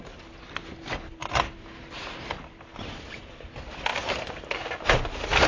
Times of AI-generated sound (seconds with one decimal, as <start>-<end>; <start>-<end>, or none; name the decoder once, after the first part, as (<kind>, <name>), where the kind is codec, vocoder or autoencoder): none